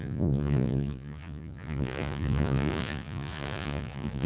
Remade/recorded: remade